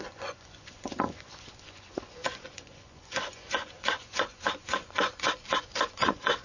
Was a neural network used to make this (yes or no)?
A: yes